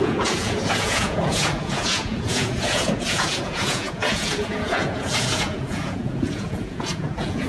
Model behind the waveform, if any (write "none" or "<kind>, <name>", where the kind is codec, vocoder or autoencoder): vocoder, Vocos